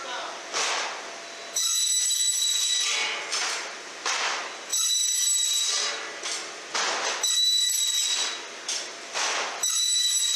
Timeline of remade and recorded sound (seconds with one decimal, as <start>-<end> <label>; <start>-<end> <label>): 0.0-3.4 recorded; 3.4-4.0 remade; 4.0-10.4 recorded